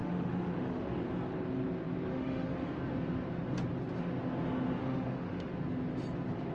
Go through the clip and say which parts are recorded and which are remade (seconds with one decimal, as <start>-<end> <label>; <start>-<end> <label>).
0.0-1.0 remade; 1.0-2.1 recorded; 2.1-2.7 remade; 2.7-4.8 recorded; 4.8-5.5 remade; 5.5-6.5 recorded

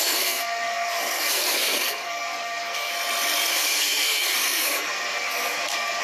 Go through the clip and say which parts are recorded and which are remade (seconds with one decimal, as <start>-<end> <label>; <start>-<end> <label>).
0.0-2.9 remade; 2.9-3.5 recorded; 3.5-6.0 remade